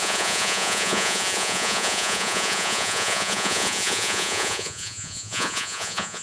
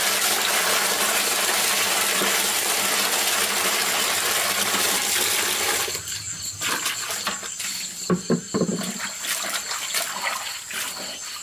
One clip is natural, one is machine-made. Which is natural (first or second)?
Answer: second